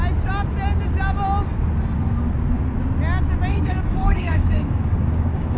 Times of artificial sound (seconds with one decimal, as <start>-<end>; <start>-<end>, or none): 3.5-5.6